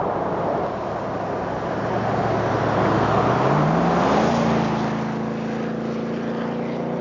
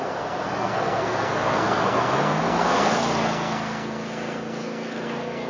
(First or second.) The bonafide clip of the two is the first